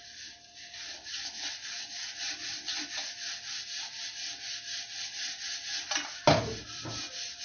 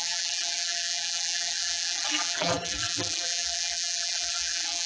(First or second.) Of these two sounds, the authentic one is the first